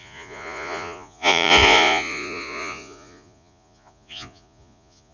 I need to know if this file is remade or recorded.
remade